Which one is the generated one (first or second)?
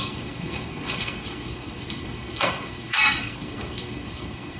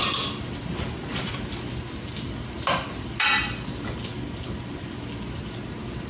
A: first